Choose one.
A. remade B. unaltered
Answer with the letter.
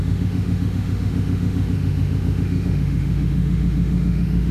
A